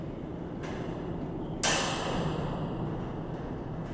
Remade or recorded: recorded